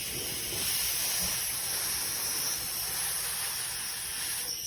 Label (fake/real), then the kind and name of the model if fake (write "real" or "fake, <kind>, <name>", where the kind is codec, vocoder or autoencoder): real